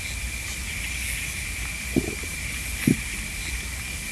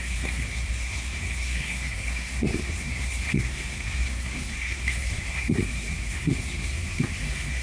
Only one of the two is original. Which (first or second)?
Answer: first